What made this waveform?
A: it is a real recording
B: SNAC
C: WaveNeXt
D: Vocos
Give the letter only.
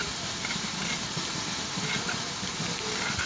A